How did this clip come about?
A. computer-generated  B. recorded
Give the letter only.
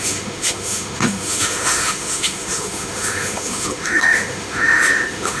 A